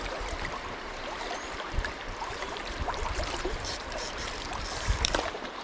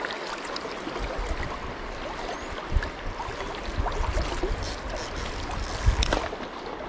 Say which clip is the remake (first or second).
first